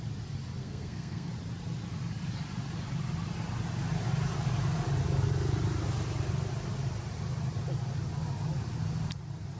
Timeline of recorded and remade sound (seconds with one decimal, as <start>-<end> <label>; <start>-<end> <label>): 0.0-0.6 recorded; 0.6-1.3 remade; 1.3-9.6 recorded